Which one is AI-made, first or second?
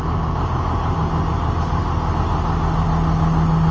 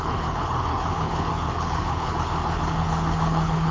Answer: second